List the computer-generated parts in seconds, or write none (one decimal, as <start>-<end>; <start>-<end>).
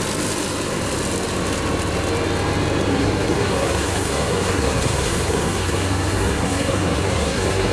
2.9-7.7